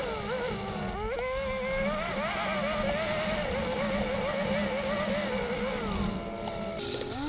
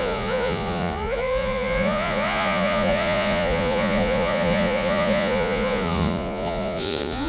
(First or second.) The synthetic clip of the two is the second